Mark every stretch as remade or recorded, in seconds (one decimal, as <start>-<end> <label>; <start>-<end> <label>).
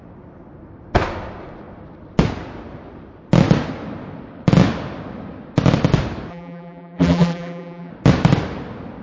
0.0-6.3 recorded; 6.3-7.9 remade; 7.9-9.0 recorded